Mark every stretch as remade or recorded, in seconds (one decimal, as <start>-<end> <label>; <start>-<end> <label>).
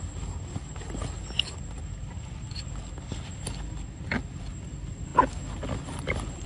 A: 0.0-6.5 recorded